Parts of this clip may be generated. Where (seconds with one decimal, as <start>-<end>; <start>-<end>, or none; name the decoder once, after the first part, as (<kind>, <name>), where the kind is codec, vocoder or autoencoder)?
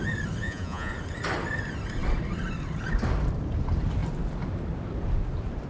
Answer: 0.4-0.9 (vocoder, Vocos)